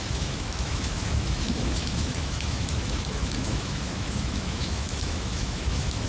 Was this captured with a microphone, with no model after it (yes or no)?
no